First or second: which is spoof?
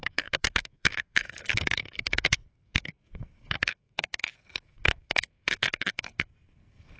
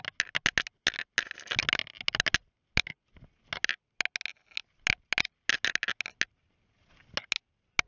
first